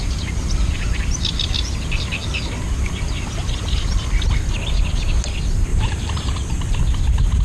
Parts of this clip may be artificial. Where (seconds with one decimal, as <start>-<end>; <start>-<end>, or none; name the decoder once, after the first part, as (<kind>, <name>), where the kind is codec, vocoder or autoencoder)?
5.7-6.8 (vocoder, BigVGAN v2)